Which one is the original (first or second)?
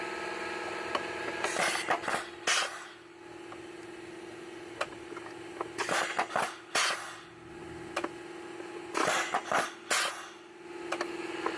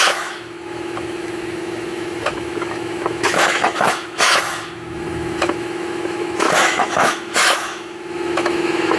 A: first